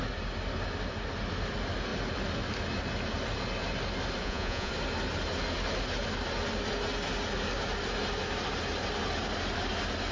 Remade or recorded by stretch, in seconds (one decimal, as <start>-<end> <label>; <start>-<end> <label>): 0.0-4.2 recorded; 4.2-4.7 remade; 4.7-10.1 recorded